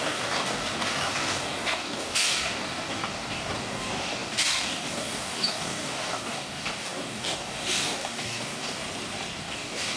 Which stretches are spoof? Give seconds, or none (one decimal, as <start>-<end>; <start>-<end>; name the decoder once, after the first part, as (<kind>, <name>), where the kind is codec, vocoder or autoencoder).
0.0-8.8 (codec, DAC); 9.4-10.0